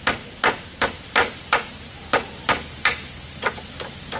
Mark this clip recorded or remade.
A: recorded